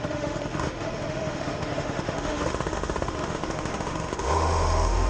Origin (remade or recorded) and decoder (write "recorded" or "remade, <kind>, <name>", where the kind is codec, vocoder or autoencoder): remade, autoencoder, DAC-VAE